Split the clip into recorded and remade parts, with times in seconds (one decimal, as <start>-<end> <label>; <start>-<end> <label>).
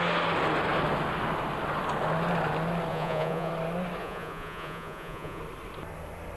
0.0-2.9 recorded; 2.9-3.5 remade; 3.5-4.0 recorded; 4.0-5.4 remade; 5.4-6.4 recorded